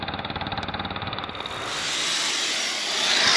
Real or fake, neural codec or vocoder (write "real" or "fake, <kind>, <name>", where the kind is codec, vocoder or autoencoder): real